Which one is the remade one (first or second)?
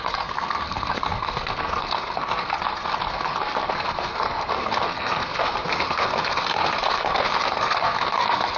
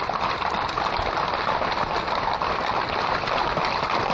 first